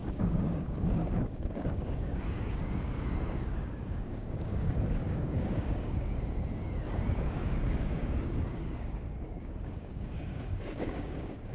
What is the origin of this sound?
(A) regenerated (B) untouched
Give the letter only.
A